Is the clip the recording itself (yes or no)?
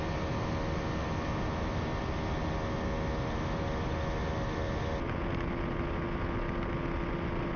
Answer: yes